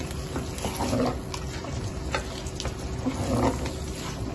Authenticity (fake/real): real